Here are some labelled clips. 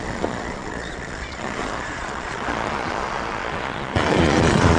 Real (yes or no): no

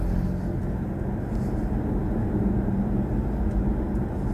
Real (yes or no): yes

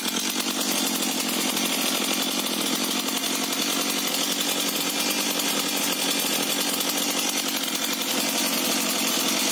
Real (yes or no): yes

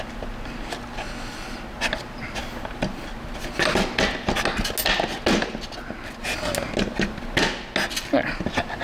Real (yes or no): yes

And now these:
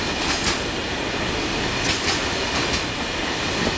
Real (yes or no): yes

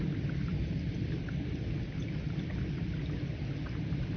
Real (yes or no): yes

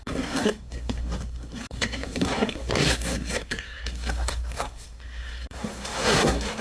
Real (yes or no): no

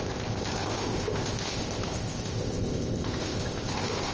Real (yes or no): no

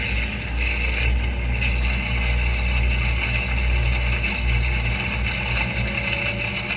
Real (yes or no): yes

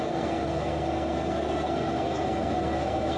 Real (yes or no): no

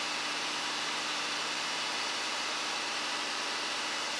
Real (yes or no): no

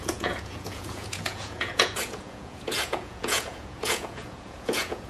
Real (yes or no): no